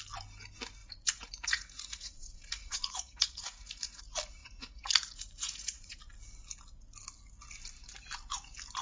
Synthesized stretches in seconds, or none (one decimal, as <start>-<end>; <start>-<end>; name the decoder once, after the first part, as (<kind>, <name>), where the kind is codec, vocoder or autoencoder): 0.8-4.0 (vocoder, Vocos); 4.4-6.0